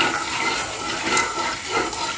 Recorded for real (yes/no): yes